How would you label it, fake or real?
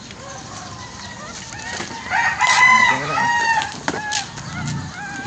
real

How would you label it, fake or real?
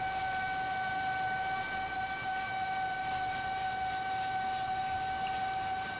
real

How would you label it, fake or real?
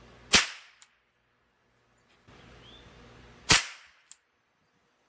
real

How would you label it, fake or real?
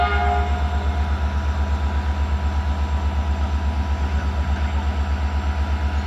real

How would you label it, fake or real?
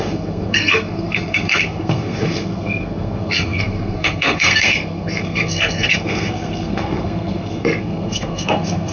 fake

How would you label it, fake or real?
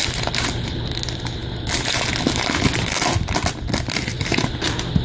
real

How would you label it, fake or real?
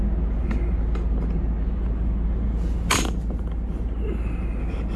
real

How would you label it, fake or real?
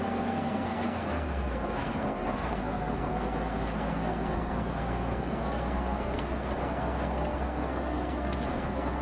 fake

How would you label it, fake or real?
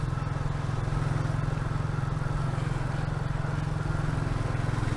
real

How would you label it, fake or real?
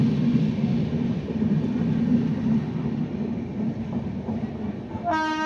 real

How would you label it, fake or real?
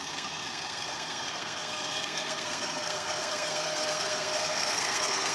fake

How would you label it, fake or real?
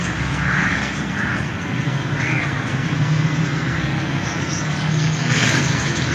fake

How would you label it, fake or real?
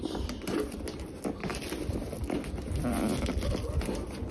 real